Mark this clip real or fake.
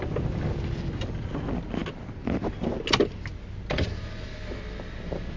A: real